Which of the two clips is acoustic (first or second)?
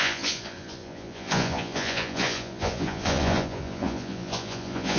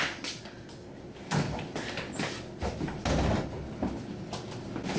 second